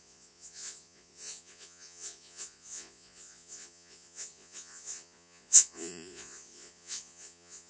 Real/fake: fake